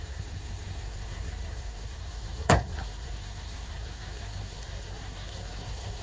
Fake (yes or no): yes